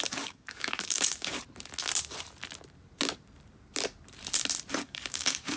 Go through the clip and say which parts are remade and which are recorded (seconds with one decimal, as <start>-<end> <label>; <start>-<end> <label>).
0.0-1.3 remade; 1.3-4.7 recorded; 4.7-5.6 remade